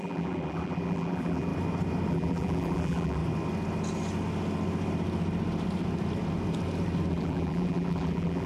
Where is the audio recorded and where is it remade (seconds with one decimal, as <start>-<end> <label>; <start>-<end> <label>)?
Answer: 0.0-1.5 remade; 1.5-2.1 recorded; 2.1-3.2 remade; 3.2-7.1 recorded; 7.1-8.5 remade